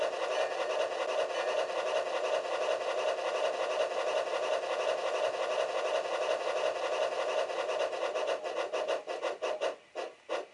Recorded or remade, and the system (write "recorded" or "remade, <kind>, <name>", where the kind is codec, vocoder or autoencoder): recorded